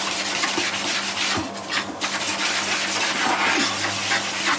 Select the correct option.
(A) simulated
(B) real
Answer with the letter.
B